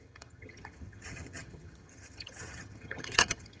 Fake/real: fake